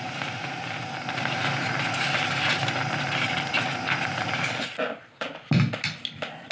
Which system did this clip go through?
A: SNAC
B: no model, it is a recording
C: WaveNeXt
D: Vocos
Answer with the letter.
B